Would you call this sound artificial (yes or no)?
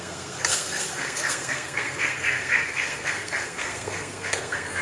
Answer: yes